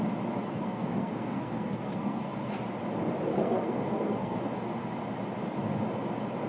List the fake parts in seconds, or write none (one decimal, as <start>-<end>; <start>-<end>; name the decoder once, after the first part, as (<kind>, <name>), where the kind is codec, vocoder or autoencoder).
0.5-2.6 (codec, SNAC); 3.3-4.4